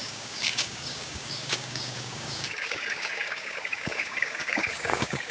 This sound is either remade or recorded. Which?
remade